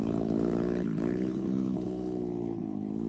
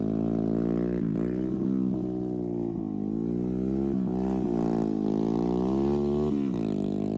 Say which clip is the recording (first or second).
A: second